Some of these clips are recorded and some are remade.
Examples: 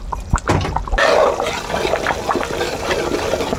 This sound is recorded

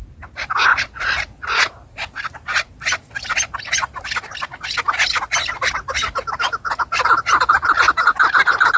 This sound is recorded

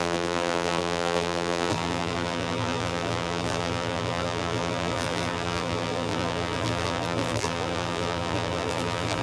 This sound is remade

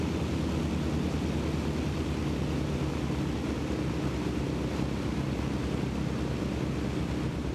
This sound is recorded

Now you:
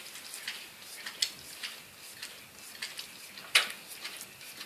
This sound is recorded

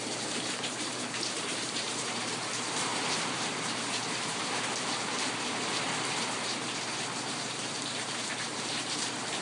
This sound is remade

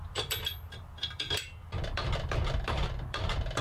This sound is remade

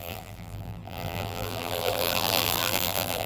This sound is remade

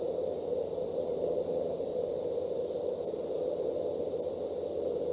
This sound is recorded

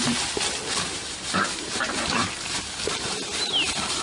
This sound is recorded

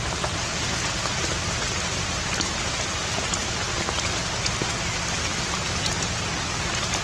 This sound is recorded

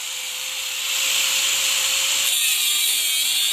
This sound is remade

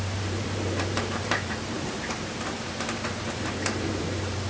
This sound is remade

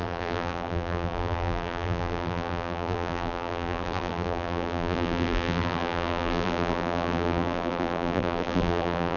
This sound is remade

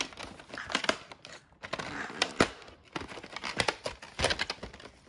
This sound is recorded